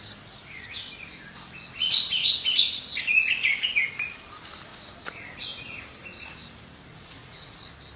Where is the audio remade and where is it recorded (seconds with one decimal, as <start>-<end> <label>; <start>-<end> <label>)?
0.0-4.7 recorded; 4.7-5.8 remade; 5.8-6.9 recorded; 6.9-7.6 remade; 7.6-8.0 recorded